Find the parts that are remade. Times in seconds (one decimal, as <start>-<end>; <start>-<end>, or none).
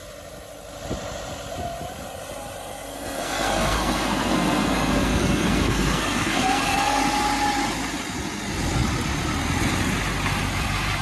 2.9-7.0